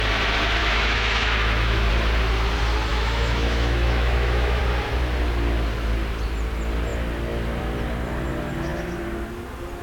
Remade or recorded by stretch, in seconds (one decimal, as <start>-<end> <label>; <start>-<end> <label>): 0.0-0.6 recorded; 0.6-1.9 remade; 1.9-2.9 recorded; 2.9-4.6 remade; 4.6-9.8 recorded